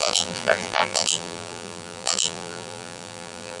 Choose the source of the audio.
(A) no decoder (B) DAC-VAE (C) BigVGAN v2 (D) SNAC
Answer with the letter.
C